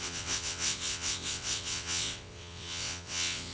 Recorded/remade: remade